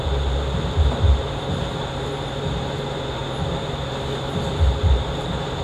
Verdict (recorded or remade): remade